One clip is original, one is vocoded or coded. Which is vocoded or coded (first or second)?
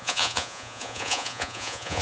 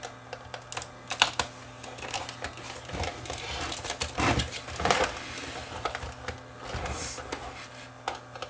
first